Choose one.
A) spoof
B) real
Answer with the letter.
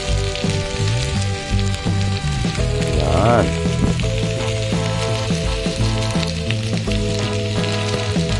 B